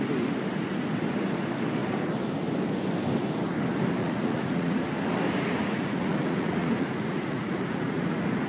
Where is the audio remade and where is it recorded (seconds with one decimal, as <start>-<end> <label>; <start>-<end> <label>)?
0.0-4.0 recorded; 4.0-4.8 remade; 4.8-5.6 recorded; 5.6-8.5 remade